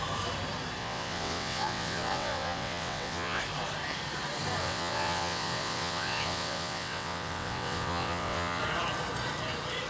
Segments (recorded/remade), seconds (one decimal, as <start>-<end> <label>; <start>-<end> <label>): 0.0-0.8 recorded; 0.8-3.4 remade; 3.4-4.6 recorded; 4.6-8.6 remade; 8.6-9.9 recorded